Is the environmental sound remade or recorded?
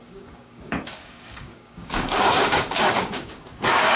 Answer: remade